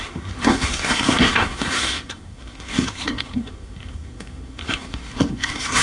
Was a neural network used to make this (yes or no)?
yes